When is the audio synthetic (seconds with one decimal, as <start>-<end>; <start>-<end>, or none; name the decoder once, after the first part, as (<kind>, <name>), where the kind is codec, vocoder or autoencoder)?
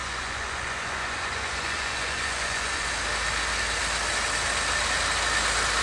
0.0-2.9 (vocoder, Vocos)